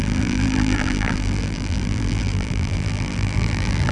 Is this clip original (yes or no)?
no